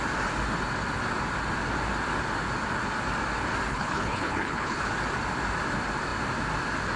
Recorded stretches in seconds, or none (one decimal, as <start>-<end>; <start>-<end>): 0.0-3.7; 4.9-7.0